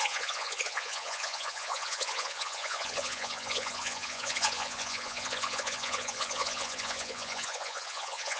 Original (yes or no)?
no